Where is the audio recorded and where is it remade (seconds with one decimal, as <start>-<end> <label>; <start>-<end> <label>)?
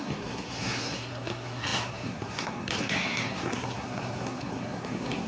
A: 0.0-5.3 remade